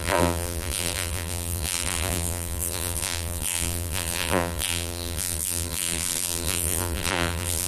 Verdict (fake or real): fake